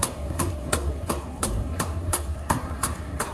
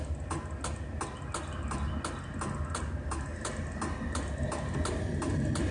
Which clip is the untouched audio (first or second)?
second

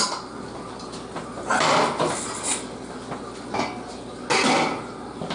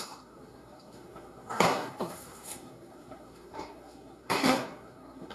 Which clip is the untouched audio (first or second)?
first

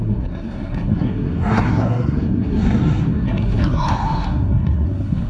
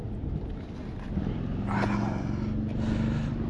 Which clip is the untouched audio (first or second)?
second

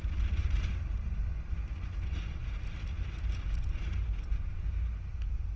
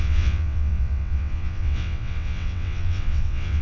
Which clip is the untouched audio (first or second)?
first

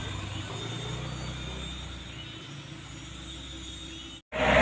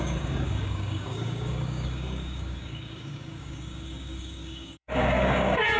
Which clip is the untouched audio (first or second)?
first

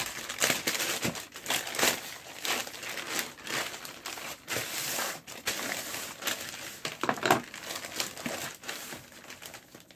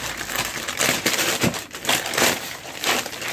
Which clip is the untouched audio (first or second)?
first